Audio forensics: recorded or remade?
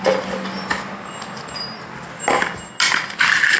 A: recorded